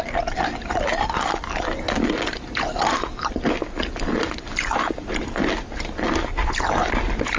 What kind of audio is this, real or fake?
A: real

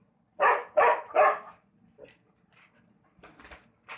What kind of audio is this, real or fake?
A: real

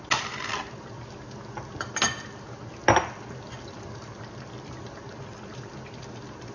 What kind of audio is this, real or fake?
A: real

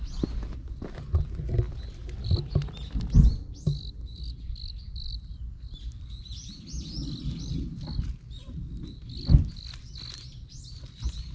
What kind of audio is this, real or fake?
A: real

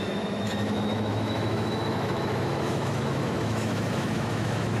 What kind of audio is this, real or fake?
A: fake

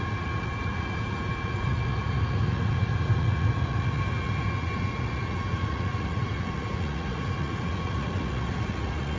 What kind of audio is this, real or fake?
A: fake